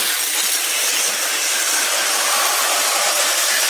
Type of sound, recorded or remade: recorded